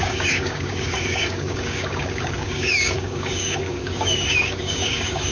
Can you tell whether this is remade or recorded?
remade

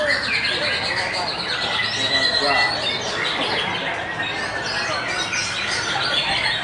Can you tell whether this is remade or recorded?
recorded